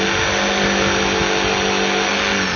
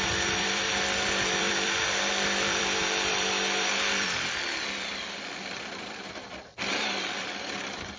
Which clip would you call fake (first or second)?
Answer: second